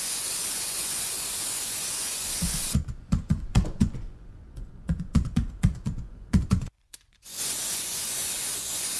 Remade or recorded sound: remade